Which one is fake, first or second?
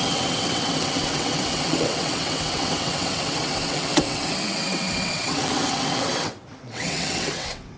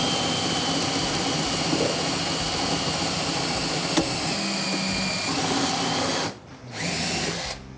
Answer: first